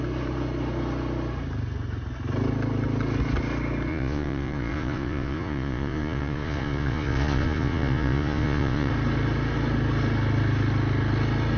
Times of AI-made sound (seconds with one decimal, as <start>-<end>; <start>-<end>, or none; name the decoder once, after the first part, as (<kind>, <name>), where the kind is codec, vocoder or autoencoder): 3.9-8.9 (vocoder, Vocos)